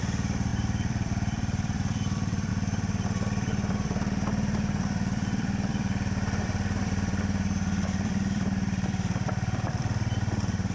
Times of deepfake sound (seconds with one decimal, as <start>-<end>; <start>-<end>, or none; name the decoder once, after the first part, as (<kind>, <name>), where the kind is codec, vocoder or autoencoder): 0.0-10.7 (vocoder, BigVGAN v2)